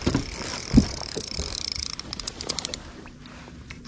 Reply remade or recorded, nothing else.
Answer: recorded